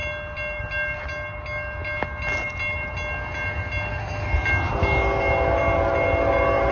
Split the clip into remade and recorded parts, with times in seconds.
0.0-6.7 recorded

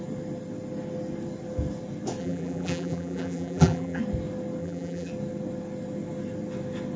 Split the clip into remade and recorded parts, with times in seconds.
0.0-2.2 recorded; 2.2-4.0 remade; 4.0-4.6 recorded; 4.6-5.1 remade; 5.1-7.0 recorded

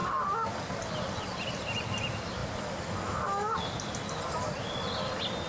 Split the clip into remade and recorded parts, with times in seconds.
0.0-5.5 recorded

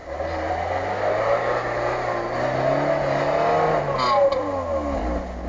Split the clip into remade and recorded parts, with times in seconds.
0.0-5.5 recorded